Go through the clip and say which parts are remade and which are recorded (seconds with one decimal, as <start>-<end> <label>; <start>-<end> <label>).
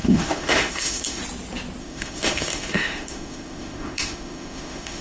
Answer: 0.0-1.2 remade; 1.2-1.8 recorded; 1.8-5.0 remade